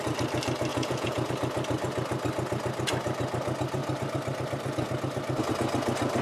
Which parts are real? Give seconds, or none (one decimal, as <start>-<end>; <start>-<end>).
0.0-0.7; 1.3-6.2

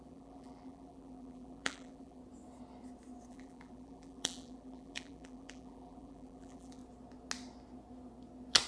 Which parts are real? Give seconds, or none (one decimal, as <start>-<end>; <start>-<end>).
2.2-3.3; 6.8-8.7

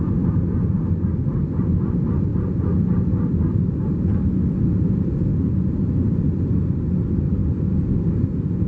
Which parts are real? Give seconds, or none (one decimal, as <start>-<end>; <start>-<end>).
0.0-8.7

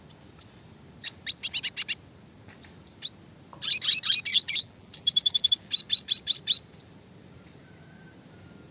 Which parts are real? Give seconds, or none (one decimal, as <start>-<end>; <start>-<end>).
0.0-4.3; 5.5-8.7

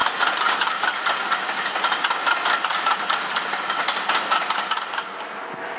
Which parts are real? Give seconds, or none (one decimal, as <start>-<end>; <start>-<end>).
0.0-5.8

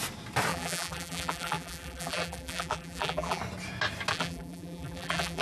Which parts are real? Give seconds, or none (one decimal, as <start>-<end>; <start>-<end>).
0.0-0.5; 3.4-4.1

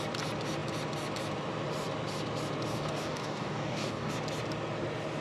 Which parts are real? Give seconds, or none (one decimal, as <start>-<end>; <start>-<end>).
0.0-2.7; 4.1-5.2

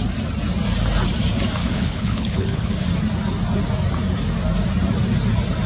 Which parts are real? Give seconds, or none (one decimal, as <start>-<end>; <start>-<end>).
0.0-1.6; 2.7-5.7